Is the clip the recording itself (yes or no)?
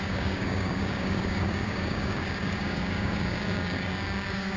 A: no